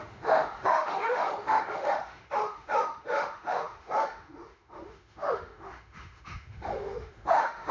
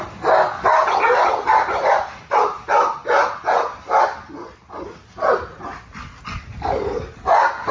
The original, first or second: second